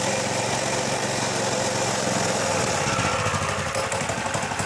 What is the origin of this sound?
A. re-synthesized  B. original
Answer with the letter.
B